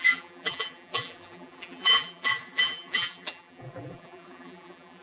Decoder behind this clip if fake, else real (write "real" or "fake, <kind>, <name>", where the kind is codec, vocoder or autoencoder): fake, vocoder, BigVGAN v2